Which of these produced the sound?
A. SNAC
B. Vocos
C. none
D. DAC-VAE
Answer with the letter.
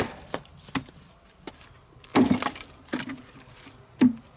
C